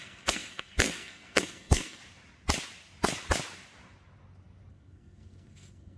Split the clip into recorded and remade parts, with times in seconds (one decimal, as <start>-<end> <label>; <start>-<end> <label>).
0.0-2.0 remade; 2.0-4.7 recorded; 4.7-6.0 remade